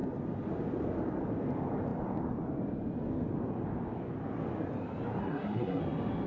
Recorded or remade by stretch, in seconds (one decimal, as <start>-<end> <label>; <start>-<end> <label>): 0.0-5.2 recorded; 5.2-5.8 remade; 5.8-6.3 recorded